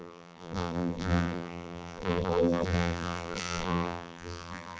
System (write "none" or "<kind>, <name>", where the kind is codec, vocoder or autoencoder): vocoder, BigVGAN v2